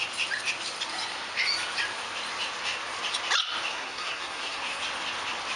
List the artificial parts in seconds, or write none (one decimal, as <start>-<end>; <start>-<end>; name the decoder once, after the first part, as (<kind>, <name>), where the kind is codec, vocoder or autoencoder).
3.7-4.8 (codec, SNAC)